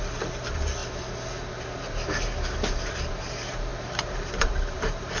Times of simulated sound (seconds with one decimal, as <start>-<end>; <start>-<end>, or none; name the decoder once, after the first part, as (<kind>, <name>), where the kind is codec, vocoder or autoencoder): 0.0-0.8 (vocoder, BigVGAN v2); 3.2-5.2